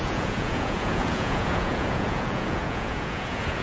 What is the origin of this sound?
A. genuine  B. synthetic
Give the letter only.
B